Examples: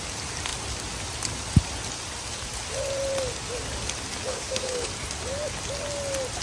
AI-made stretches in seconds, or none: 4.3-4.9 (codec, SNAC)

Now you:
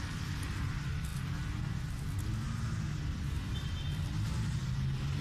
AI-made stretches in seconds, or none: none

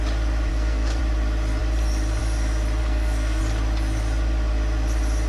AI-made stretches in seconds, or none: 0.5-1.0 (codec, SNAC); 2.8-3.4